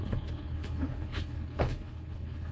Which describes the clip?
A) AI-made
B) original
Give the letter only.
A